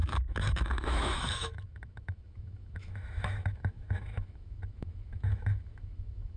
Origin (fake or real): fake